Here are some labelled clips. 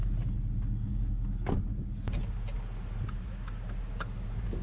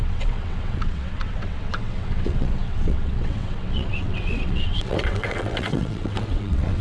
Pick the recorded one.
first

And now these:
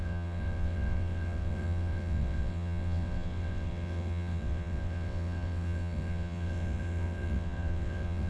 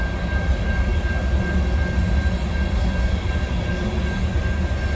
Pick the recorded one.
second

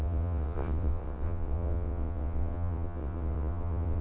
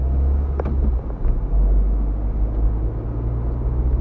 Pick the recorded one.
second